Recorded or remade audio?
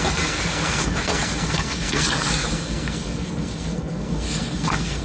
remade